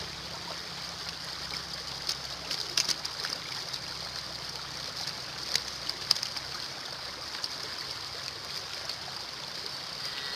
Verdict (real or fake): real